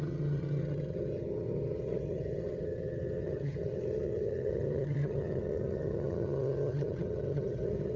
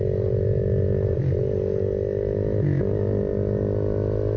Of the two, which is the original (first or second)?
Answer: second